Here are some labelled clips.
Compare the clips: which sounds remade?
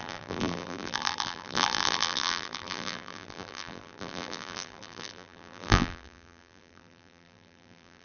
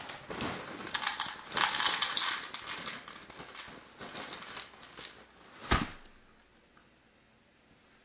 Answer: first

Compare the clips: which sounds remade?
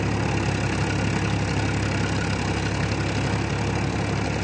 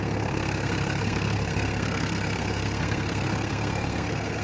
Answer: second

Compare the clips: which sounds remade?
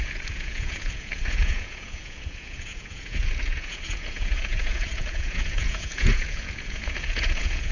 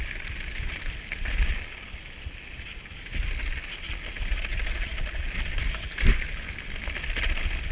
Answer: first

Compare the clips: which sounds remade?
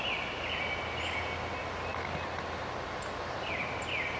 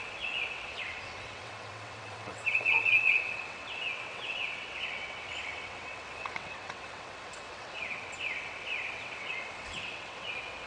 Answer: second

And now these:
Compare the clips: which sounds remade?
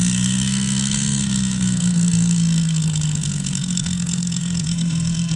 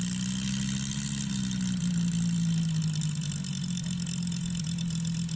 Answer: first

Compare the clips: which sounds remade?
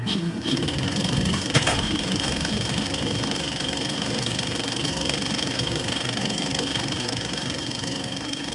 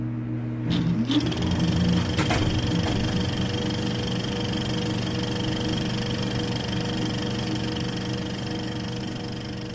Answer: first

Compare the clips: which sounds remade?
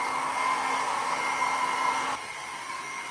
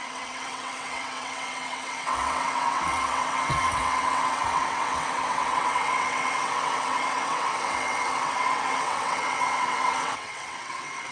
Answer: second